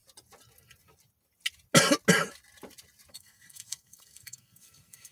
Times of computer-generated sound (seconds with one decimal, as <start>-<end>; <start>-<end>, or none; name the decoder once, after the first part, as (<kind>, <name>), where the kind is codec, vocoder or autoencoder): 3.1-5.1 (codec, SNAC)